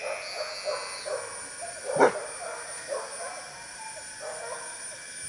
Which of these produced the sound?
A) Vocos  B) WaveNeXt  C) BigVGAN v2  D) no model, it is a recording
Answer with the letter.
D